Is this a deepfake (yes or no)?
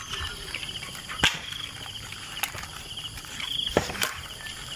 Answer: yes